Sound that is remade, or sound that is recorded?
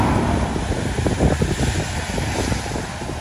recorded